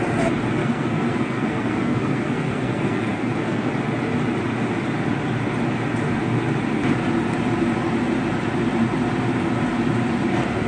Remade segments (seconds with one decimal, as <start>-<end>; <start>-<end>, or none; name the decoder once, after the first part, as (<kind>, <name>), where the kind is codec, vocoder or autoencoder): 0.6-3.7 (codec, SNAC)